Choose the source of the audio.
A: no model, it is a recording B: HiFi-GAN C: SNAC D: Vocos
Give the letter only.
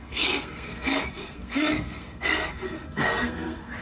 C